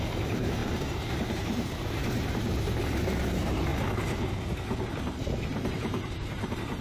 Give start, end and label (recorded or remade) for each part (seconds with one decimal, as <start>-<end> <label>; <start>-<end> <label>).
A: 0.0-3.7 remade; 3.7-5.0 recorded; 5.0-6.8 remade